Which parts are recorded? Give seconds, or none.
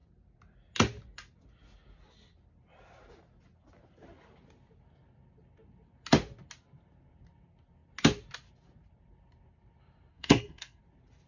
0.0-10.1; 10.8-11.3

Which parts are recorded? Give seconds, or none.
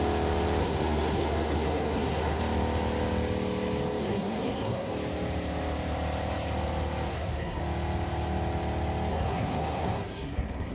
0.0-0.6; 2.4-4.0; 4.9-7.1; 7.6-9.1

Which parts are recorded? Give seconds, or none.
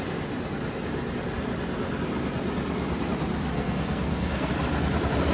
0.0-3.5; 4.5-5.3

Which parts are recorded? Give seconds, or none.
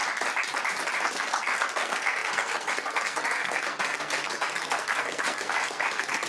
0.0-1.0